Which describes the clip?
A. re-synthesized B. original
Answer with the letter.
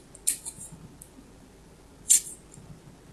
B